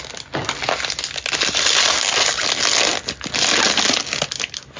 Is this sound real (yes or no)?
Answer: yes